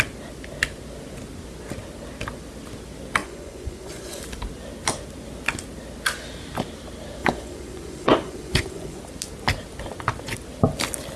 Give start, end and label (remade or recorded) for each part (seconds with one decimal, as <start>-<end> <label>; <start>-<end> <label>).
0.0-3.2 recorded; 3.2-4.2 remade; 4.2-7.2 recorded; 7.2-9.0 remade; 9.0-11.2 recorded